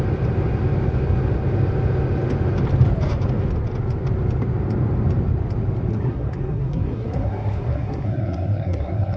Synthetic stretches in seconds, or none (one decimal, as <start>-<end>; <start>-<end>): 5.9-9.2